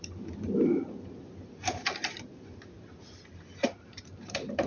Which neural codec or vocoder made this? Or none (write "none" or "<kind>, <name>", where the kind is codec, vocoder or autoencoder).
vocoder, BigVGAN v2